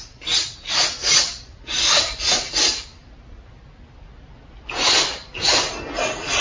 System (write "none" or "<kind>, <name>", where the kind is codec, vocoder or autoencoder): none